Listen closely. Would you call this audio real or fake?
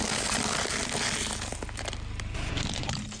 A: real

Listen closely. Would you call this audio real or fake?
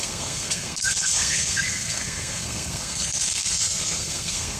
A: fake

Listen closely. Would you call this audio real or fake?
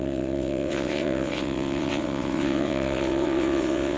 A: fake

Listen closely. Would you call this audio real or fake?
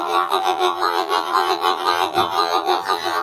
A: fake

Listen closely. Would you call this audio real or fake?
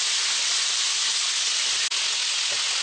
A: real